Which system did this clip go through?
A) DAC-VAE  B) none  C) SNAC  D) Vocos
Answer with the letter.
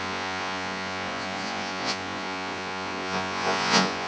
D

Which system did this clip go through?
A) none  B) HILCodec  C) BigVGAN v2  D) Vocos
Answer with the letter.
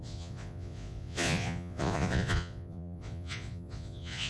D